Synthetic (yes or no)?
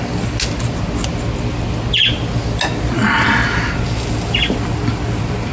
no